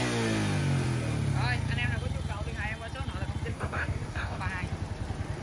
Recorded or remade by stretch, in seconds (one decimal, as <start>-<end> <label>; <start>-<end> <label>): 0.0-3.5 recorded; 3.5-4.4 remade; 4.4-5.4 recorded